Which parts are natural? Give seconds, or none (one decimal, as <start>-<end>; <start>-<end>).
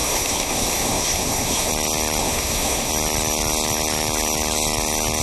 1.7-2.2; 2.9-5.2